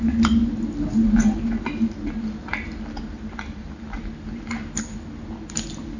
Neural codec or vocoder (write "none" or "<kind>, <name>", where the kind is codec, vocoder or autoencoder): none